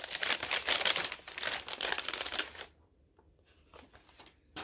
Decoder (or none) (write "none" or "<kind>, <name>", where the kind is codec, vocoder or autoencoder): none